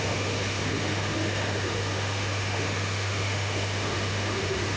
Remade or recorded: remade